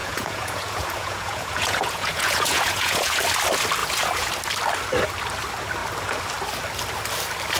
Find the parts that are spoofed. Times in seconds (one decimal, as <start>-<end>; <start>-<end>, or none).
0.0-3.2; 3.8-4.3